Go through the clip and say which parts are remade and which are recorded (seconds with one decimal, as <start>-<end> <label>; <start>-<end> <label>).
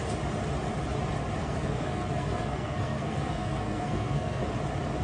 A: 0.0-1.4 recorded; 1.4-4.4 remade; 4.4-5.0 recorded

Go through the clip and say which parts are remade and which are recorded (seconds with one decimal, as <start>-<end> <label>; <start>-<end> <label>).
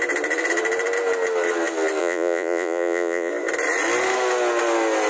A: 0.0-2.0 recorded; 2.0-3.3 remade; 3.3-5.1 recorded